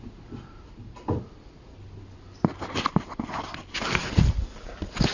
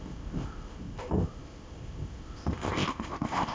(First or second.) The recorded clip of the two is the first